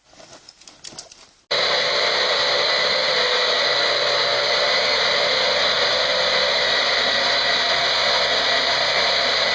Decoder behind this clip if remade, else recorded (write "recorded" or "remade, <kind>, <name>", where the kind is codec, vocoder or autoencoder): recorded